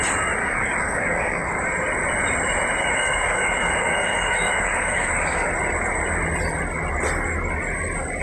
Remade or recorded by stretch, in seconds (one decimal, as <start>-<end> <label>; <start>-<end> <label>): 0.0-0.4 recorded; 0.4-1.7 remade; 1.7-2.8 recorded; 2.8-5.5 remade; 5.5-8.2 recorded